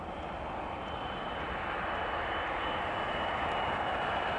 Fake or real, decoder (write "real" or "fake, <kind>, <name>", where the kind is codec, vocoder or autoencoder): real